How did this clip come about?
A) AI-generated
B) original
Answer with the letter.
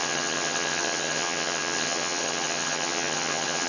A